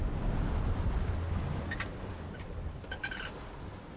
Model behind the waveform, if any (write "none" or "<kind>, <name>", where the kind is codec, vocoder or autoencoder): none